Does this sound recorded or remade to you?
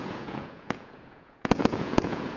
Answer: remade